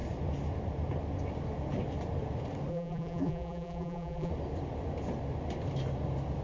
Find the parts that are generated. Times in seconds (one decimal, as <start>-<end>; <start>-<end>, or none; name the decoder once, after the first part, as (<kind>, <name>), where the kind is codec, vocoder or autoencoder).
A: 2.7-4.3 (vocoder, BigVGAN v2)